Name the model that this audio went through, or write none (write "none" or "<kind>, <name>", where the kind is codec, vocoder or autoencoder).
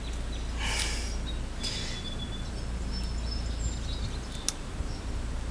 none